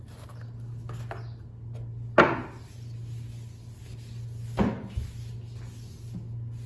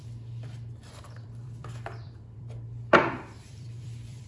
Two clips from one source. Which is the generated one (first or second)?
second